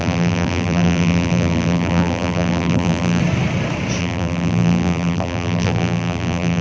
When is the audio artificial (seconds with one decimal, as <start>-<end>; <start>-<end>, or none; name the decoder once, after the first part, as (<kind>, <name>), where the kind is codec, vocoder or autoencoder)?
0.0-3.2 (vocoder, BigVGAN v2); 4.0-6.6